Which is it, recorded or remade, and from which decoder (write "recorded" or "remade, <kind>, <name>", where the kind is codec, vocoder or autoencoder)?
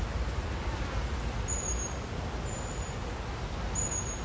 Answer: recorded